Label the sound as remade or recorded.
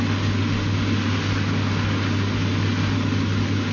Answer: recorded